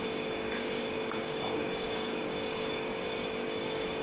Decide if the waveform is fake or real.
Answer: fake